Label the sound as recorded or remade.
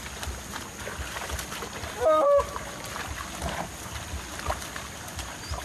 recorded